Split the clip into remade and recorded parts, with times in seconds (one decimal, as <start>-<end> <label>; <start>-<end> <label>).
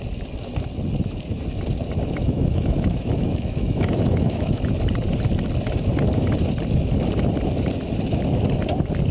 0.0-2.2 recorded; 2.2-4.7 remade; 4.7-9.1 recorded